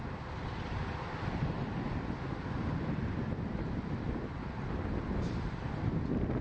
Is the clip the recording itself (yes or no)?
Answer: yes